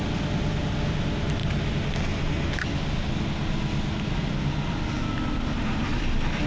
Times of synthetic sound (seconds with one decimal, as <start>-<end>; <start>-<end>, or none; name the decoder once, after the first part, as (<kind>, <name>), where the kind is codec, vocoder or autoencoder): none